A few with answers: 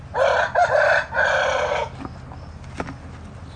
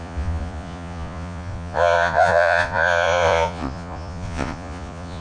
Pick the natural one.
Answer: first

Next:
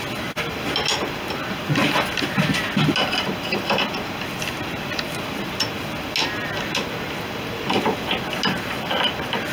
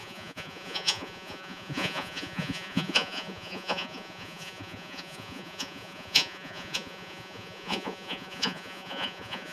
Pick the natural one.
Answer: first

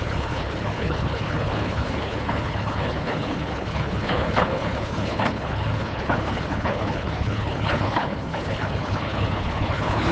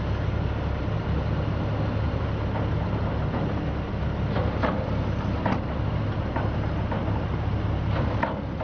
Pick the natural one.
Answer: second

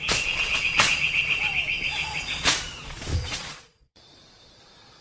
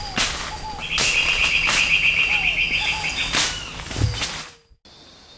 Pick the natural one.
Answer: second